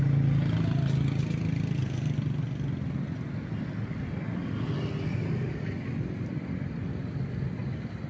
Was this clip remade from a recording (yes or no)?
no